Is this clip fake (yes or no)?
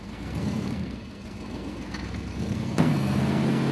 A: yes